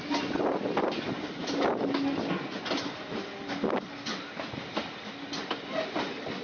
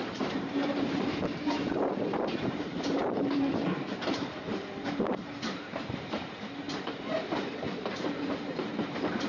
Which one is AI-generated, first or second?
second